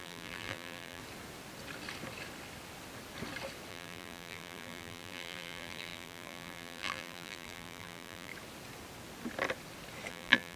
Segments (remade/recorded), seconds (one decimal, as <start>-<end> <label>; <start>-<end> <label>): 0.0-1.0 remade; 1.0-3.7 recorded; 3.7-8.3 remade; 8.3-10.1 recorded; 10.1-10.6 remade